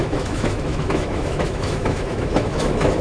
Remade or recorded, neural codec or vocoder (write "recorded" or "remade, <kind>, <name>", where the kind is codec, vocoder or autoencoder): remade, autoencoder, DAC-VAE